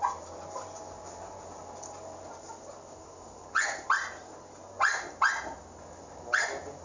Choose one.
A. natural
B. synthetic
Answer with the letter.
A